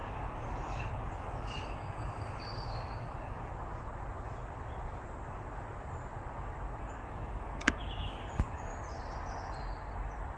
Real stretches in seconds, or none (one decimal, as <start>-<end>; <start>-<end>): 3.5-6.8; 8.7-10.4